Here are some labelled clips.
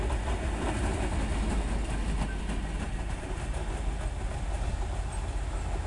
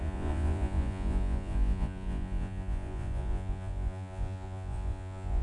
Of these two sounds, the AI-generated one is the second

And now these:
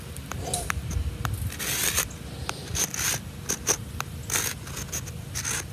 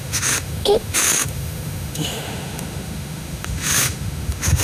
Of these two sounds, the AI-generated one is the second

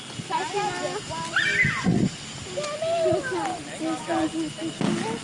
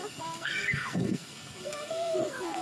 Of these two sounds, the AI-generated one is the second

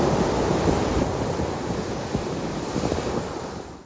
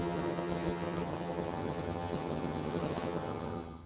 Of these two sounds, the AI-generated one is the second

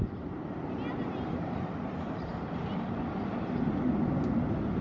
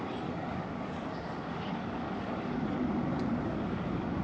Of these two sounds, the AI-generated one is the second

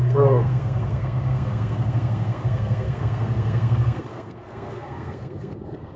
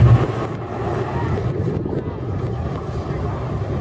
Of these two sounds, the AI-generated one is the first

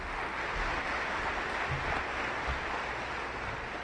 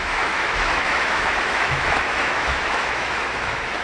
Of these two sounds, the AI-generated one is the second